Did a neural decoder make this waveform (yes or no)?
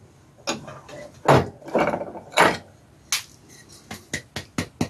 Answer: no